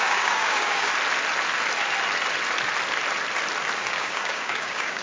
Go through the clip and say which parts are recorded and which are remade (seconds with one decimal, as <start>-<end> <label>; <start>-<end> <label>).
0.0-0.9 remade; 0.9-3.9 recorded; 3.9-5.0 remade